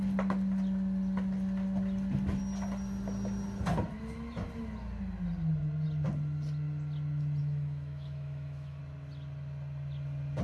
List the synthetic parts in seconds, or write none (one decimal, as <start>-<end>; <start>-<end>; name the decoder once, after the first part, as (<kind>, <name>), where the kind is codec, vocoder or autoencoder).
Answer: 7.4-8.8 (autoencoder, DAC-VAE)